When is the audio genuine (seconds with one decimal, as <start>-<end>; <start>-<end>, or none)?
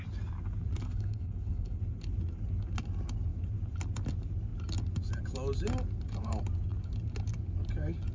0.0-0.8; 1.8-8.1